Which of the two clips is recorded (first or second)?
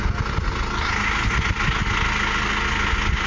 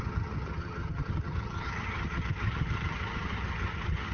first